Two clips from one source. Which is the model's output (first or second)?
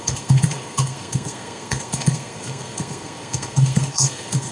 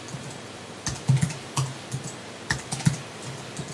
first